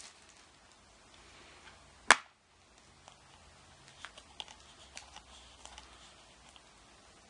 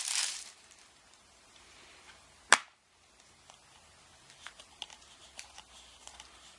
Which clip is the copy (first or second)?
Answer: second